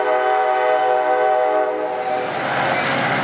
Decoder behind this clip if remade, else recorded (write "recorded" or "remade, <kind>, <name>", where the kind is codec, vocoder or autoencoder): recorded